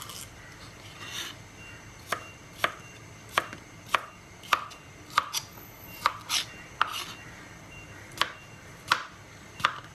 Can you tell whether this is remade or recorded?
recorded